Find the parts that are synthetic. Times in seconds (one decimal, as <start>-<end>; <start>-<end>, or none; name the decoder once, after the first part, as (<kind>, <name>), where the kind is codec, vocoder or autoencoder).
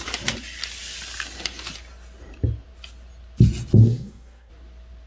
3.8-4.5 (codec, SNAC)